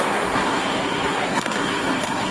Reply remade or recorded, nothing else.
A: remade